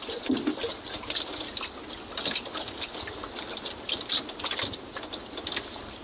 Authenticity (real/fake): real